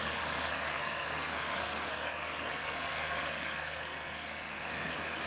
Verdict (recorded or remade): remade